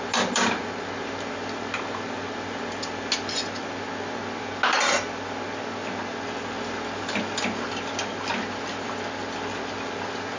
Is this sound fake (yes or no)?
no